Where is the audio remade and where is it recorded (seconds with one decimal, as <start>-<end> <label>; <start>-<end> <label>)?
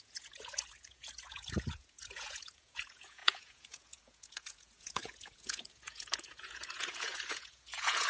0.0-8.1 remade